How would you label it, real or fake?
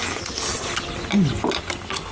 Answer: real